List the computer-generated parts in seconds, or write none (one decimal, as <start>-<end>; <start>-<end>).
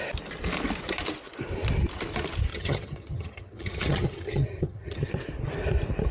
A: 2.5-5.1